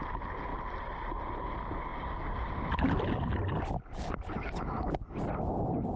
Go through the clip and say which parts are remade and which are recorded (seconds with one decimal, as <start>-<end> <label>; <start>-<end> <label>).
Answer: 0.0-6.0 recorded